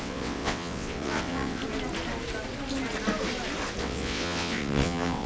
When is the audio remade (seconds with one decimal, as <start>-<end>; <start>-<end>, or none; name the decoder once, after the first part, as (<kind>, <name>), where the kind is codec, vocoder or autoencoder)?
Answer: 0.0-1.6 (vocoder, WaveNeXt); 3.8-5.3